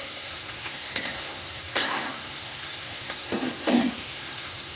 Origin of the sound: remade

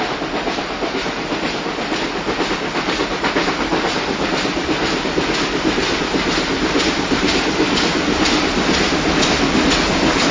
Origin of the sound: recorded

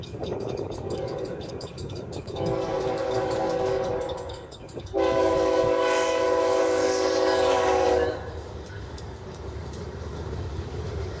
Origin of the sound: remade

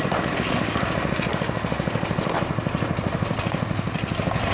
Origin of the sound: recorded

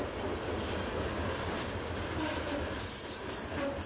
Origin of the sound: recorded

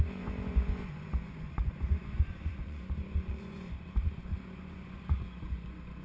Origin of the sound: remade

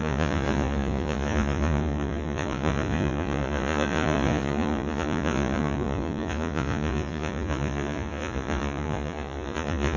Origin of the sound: remade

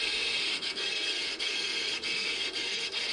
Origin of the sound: remade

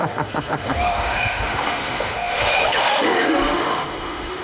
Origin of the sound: remade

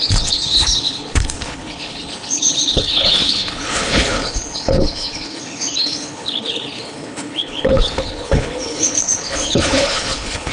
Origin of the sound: remade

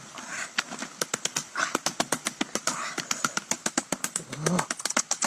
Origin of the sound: recorded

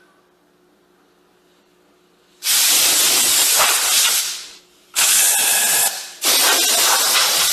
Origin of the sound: recorded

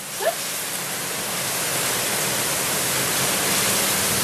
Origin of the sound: recorded